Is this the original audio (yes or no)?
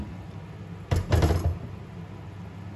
yes